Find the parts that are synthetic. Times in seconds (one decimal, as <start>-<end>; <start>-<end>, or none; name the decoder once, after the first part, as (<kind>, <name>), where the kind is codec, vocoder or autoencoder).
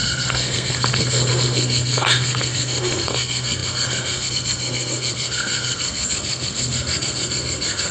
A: 0.0-7.9 (codec, SNAC)